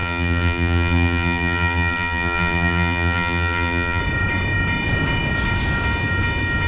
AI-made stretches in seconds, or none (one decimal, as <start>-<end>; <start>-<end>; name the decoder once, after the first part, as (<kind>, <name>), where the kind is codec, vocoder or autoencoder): 0.0-4.0 (vocoder, BigVGAN v2)